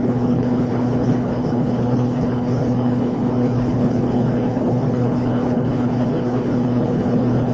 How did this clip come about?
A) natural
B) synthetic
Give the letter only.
B